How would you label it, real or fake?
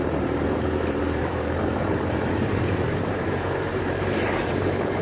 fake